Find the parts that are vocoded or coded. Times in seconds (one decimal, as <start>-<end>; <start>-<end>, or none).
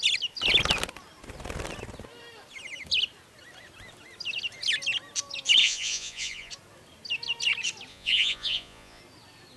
5.6-6.5; 7.9-9.0